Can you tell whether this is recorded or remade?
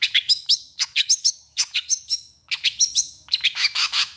remade